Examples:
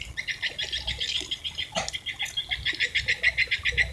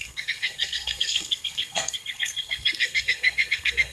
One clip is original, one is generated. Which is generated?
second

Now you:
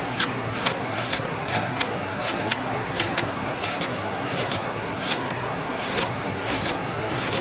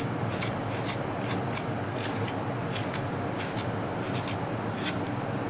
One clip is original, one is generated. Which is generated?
first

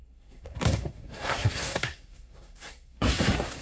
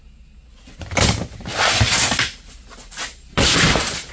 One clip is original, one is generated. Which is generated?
first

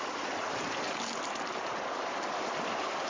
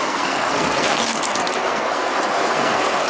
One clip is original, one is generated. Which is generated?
second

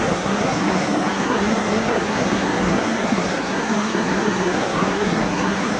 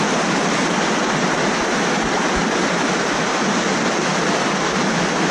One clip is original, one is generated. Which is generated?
first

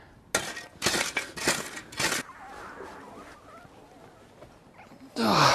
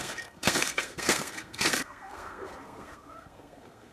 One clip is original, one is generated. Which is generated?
second